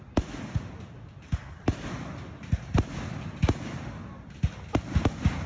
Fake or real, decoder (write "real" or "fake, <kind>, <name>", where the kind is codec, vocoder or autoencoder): real